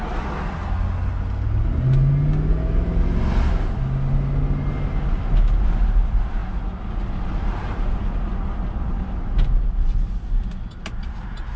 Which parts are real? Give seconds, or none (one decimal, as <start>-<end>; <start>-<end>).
0.0-11.6